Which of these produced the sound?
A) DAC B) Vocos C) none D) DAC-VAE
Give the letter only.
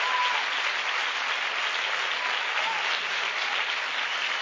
C